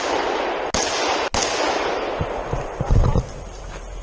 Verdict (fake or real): real